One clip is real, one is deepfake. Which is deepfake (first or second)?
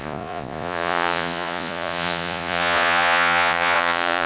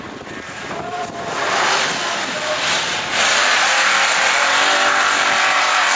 first